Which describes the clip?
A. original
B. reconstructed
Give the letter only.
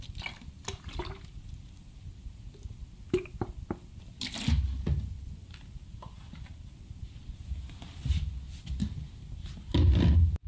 A